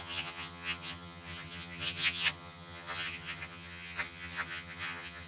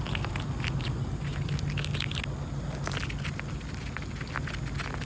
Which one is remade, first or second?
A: first